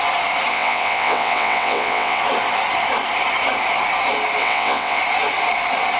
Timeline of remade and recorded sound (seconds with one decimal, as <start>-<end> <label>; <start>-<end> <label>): 0.0-0.5 recorded; 0.5-2.2 remade; 2.2-4.4 recorded; 4.4-5.0 remade; 5.0-6.0 recorded